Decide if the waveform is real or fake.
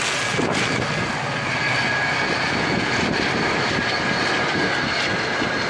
real